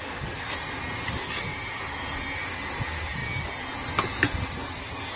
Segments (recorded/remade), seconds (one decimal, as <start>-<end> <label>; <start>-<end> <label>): 0.0-1.5 recorded; 1.5-2.1 remade; 2.1-5.2 recorded

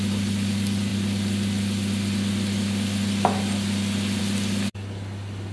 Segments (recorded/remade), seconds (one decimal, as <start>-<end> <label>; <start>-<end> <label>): 0.0-5.5 recorded

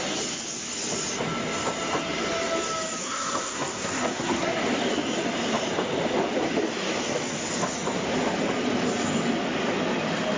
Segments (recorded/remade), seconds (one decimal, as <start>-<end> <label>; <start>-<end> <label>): 0.0-3.0 recorded; 3.0-4.6 remade; 4.6-10.4 recorded